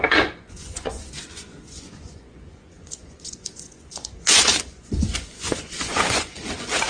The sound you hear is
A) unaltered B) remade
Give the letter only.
B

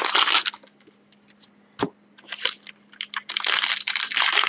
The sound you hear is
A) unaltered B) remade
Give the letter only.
A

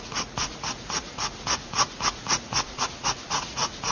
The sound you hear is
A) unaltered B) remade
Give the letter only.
B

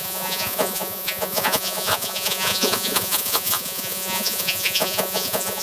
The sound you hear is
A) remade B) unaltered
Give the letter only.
A